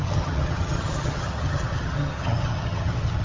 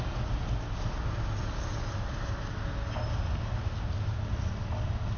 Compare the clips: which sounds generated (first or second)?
first